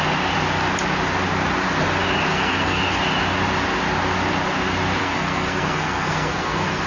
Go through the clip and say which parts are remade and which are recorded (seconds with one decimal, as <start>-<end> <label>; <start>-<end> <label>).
0.0-2.3 recorded; 2.3-2.8 remade; 2.8-5.0 recorded; 5.0-6.9 remade